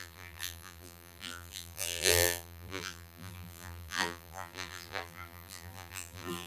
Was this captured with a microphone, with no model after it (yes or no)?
no